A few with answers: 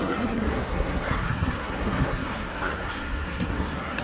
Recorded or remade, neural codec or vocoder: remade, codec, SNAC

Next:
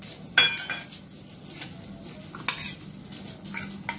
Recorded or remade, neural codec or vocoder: recorded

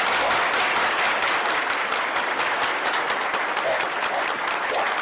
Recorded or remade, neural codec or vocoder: recorded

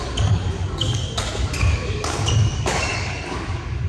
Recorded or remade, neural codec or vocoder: remade, codec, DAC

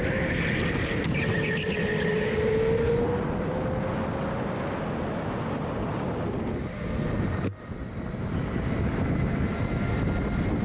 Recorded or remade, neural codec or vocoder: recorded